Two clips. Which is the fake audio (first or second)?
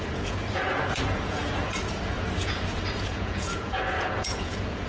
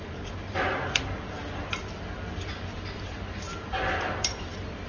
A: first